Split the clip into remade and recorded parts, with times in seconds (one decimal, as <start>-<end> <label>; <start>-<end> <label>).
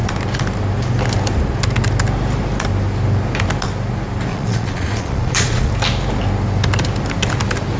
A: 0.0-4.3 recorded; 4.3-5.7 remade; 5.7-7.8 recorded